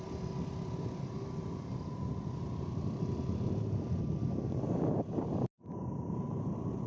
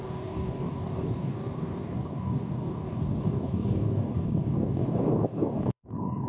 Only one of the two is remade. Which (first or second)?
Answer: second